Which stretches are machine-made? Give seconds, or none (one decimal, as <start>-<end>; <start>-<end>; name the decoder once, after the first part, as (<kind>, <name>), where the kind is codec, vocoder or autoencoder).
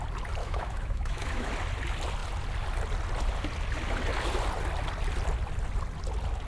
0.4-1.5 (autoencoder, DAC-VAE)